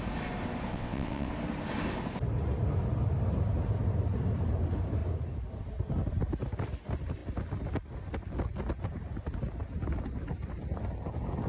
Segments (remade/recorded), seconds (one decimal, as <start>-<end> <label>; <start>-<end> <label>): 0.0-0.7 recorded; 0.7-1.3 remade; 1.3-11.5 recorded